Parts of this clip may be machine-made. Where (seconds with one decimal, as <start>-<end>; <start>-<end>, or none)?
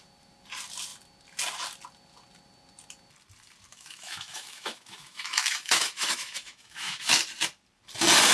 3.7-7.1